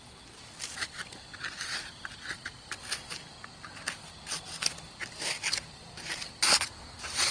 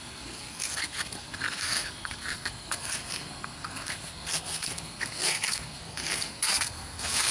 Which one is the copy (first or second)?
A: second